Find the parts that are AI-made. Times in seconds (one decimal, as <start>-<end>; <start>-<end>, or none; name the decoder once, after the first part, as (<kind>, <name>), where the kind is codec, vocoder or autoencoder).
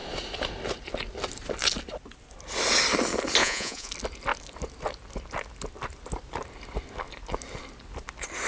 3.4-3.9 (vocoder, Vocos)